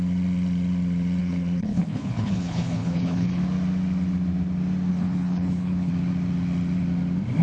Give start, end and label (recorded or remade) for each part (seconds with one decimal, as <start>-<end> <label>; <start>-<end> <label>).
0.0-1.2 recorded; 1.2-3.4 remade; 3.4-4.9 recorded; 4.9-5.9 remade; 5.9-7.4 recorded